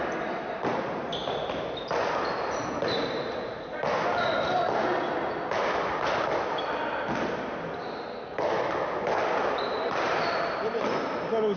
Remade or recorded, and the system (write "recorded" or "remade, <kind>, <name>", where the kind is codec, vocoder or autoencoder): recorded